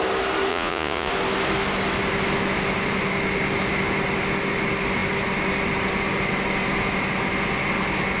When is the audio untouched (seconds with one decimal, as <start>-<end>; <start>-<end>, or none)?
0.0-0.5; 1.1-8.2